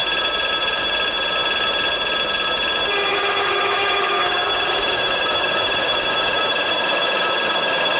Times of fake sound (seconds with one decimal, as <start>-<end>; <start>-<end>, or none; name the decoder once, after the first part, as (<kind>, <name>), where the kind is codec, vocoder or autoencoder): 3.1-8.0 (autoencoder, DAC-VAE)